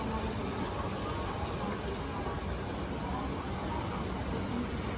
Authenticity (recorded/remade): recorded